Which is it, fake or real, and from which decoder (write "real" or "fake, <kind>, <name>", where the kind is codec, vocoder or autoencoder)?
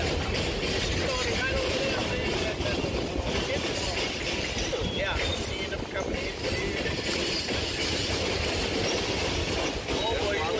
real